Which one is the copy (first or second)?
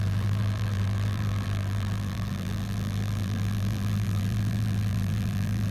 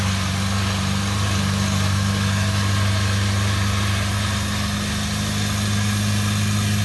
first